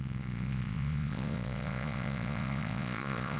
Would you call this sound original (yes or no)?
no